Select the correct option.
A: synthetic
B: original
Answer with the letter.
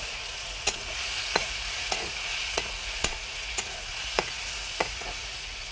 A